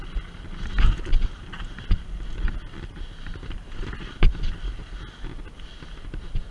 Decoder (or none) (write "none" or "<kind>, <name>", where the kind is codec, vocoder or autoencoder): none